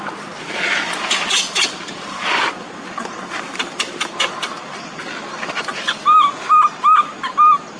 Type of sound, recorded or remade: recorded